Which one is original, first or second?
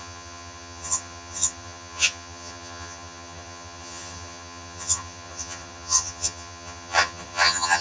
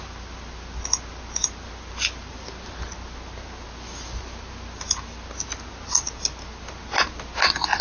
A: second